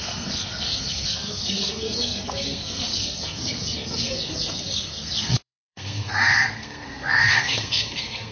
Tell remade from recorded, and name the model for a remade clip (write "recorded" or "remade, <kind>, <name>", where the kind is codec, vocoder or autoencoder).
remade, codec, SNAC